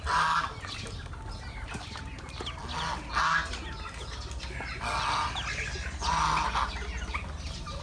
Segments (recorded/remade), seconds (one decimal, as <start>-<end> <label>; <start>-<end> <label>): 0.0-7.8 recorded